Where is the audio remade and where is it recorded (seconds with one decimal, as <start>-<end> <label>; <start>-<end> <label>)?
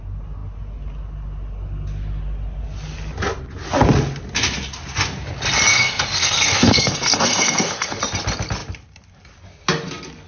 0.0-5.7 recorded; 5.7-8.0 remade; 8.0-10.3 recorded